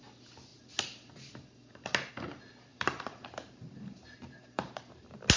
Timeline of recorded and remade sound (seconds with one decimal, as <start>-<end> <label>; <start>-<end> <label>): 0.0-2.7 recorded; 2.7-4.8 remade; 4.8-5.4 recorded